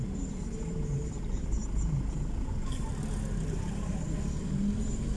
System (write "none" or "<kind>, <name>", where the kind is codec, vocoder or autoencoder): none